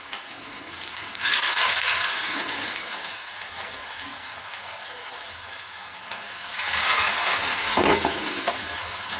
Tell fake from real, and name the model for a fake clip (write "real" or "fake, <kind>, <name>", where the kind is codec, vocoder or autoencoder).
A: fake, codec, SNAC